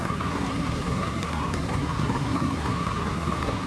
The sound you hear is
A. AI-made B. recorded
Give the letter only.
A